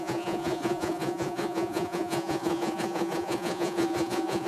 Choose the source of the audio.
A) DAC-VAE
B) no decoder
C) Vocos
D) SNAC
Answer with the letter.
C